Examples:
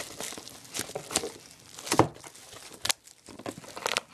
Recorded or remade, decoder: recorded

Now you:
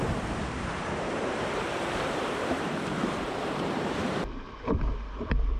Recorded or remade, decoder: remade, vocoder, BigVGAN v2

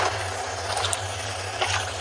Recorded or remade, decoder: recorded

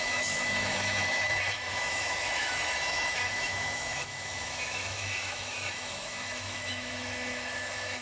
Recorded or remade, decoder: remade, autoencoder, DAC-VAE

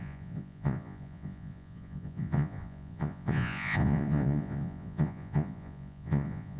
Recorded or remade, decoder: remade, vocoder, Vocos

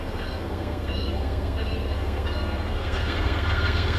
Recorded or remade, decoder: remade, codec, SNAC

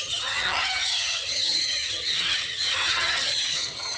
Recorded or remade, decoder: remade, vocoder, HiFi-GAN